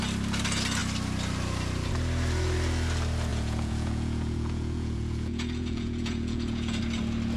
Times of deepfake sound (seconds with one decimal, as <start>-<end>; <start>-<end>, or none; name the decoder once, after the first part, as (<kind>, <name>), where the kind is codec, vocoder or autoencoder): 3.3-6.8 (vocoder, Vocos)